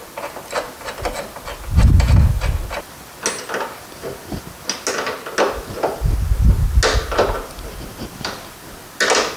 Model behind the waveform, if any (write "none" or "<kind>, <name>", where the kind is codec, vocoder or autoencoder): none